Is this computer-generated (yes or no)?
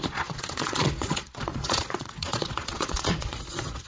yes